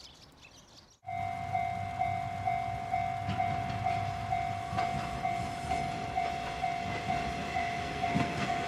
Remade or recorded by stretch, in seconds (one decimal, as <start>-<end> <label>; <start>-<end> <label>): 0.0-7.8 recorded; 7.8-8.7 remade